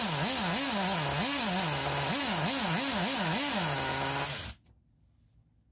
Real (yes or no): yes